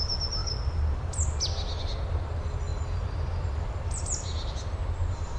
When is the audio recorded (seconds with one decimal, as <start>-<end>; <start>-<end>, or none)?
0.0-5.4